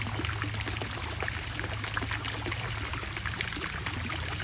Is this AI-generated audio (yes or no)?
no